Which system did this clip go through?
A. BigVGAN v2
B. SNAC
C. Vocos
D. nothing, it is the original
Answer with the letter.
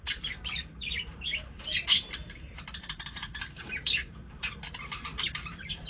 A